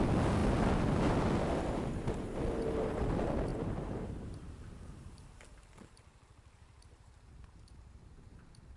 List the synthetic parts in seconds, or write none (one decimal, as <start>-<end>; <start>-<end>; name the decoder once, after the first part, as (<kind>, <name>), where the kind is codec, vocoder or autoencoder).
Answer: 3.5-8.8 (vocoder, BigVGAN v2)